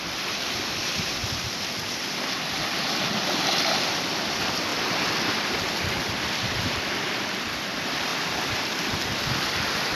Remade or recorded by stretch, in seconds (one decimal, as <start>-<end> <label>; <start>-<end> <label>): 0.0-1.2 remade; 1.2-4.3 recorded; 4.3-4.7 remade; 4.7-5.2 recorded; 5.2-8.1 remade; 8.1-9.4 recorded; 9.4-9.9 remade